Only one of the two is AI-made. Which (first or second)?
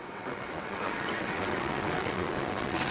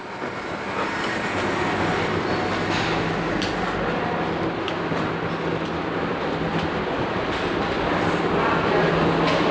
first